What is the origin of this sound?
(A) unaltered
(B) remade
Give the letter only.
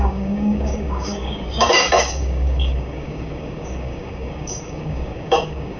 B